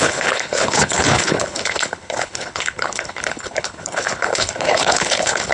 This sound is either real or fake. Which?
fake